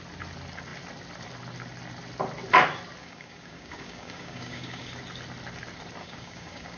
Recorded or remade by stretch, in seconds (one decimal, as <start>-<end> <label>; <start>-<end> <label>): 0.0-3.0 recorded; 3.0-4.9 remade; 4.9-6.0 recorded; 6.0-6.8 remade